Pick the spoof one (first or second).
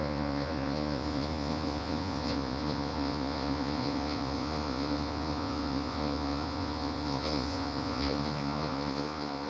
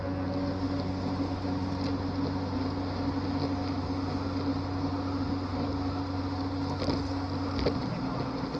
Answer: first